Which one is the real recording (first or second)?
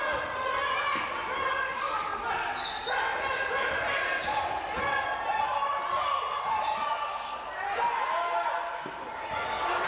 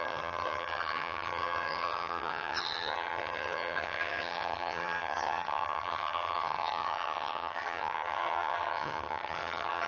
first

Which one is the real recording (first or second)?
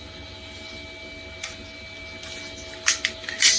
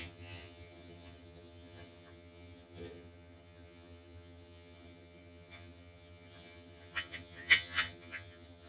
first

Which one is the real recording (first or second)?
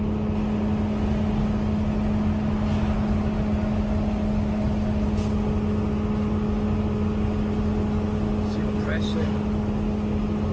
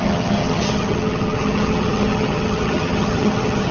first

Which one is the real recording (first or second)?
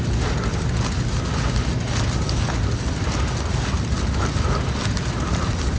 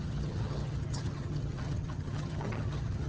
first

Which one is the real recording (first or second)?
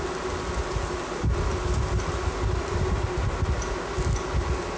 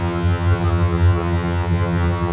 first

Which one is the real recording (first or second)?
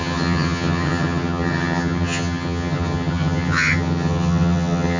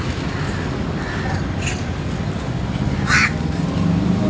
second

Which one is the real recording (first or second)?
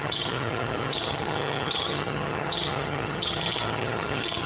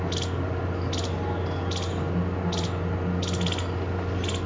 second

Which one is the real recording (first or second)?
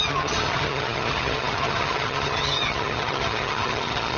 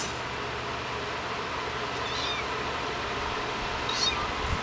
second